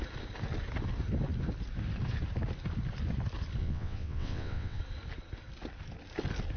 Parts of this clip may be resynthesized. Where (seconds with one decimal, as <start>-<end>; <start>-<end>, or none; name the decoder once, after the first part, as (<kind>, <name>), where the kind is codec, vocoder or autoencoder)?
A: 3.6-4.8 (vocoder, WaveNeXt)